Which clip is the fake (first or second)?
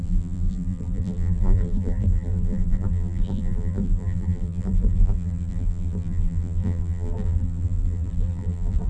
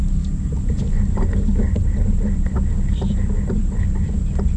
first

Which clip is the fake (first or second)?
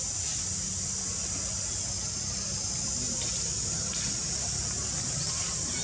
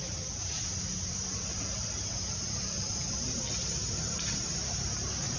second